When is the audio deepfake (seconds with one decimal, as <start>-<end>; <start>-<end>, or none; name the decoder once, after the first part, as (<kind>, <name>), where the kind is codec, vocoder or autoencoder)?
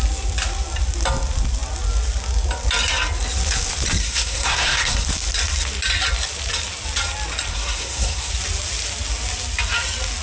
4.0-5.0 (codec, SNAC); 7.5-8.3